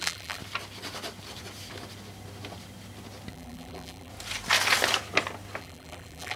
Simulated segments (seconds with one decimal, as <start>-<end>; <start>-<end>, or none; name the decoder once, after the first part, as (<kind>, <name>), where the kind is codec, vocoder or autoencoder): 0.0-0.4 (vocoder, BigVGAN v2); 3.3-4.1; 5.6-6.4